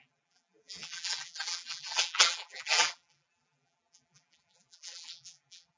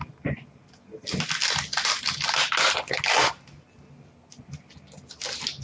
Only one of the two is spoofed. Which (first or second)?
first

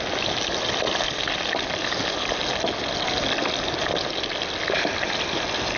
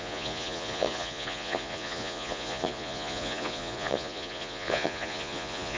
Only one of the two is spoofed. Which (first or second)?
second